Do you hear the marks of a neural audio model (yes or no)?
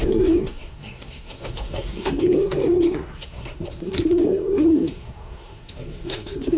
yes